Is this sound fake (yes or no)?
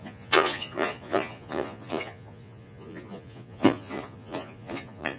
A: yes